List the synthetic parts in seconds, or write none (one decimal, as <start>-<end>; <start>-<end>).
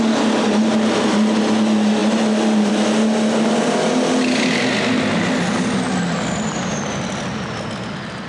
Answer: none